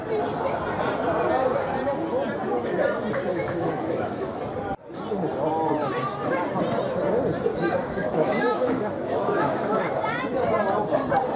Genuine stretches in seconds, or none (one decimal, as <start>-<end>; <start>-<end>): 0.0-3.3; 4.4-7.5; 9.9-11.4